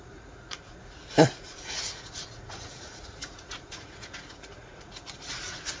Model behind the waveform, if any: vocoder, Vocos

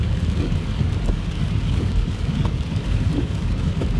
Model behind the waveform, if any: codec, DAC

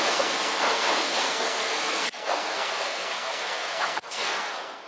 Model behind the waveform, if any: codec, SNAC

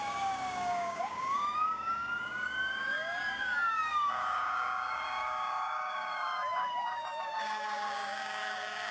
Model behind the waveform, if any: codec, DAC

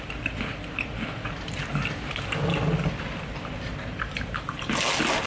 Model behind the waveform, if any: none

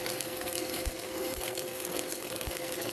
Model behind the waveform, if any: codec, SNAC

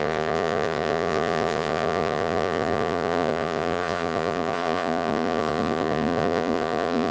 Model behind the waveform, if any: vocoder, Vocos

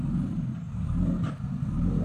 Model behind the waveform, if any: none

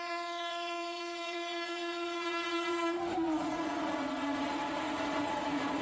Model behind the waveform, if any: vocoder, Vocos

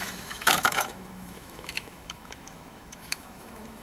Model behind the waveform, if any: autoencoder, DAC-VAE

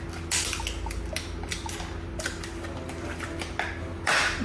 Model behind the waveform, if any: none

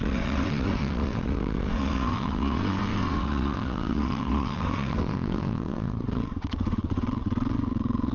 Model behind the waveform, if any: vocoder, WaveNeXt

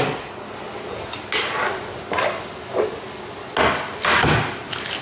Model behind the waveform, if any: none